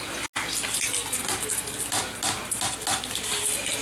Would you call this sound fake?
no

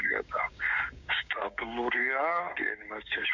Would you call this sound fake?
yes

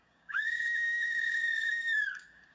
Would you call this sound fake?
yes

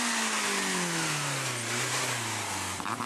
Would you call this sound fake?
no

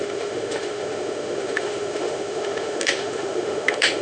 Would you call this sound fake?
yes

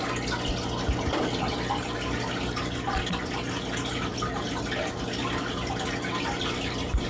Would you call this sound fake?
no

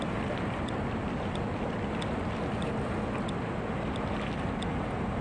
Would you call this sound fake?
no